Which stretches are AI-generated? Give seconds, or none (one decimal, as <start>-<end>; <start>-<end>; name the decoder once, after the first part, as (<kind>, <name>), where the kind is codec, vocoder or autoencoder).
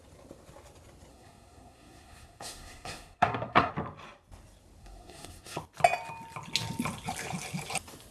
1.1-3.7 (codec, SNAC); 4.8-5.6